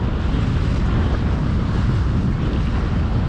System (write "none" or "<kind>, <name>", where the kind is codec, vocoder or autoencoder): none